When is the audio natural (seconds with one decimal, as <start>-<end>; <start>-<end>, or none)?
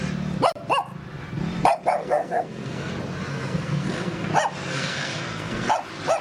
0.0-2.0; 2.9-3.3; 4.3-4.7; 5.7-6.2